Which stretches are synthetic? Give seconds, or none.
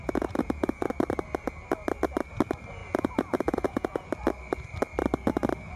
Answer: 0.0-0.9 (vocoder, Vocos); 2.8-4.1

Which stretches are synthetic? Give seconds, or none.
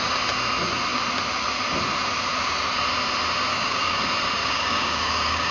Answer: 3.5-4.0 (codec, DAC); 4.4-5.5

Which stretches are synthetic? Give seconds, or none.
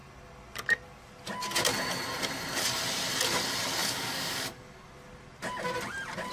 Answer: 3.8-4.9 (codec, DAC)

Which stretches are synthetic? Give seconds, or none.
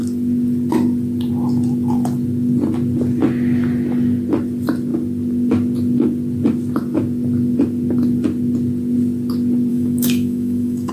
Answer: 9.7-10.9 (autoencoder, DAC-VAE)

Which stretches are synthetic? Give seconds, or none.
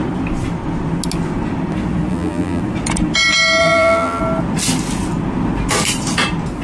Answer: 2.1-2.6 (vocoder, BigVGAN v2); 3.6-4.2